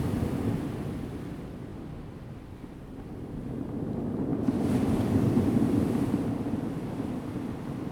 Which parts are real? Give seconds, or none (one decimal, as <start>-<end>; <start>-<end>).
0.0-7.9